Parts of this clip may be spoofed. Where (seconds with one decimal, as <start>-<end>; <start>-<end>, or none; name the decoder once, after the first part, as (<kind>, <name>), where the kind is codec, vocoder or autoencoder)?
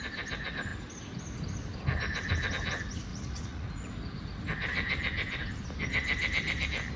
3.1-3.9 (vocoder, Vocos)